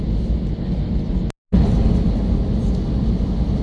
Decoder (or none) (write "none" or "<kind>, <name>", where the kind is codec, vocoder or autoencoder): none